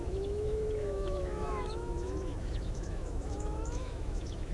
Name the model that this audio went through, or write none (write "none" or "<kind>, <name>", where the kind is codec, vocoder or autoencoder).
autoencoder, DAC-VAE